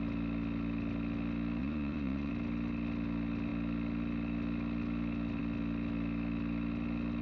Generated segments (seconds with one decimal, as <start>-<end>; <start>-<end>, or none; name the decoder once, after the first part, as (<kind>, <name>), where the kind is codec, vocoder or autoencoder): 1.6-2.3 (vocoder, Vocos)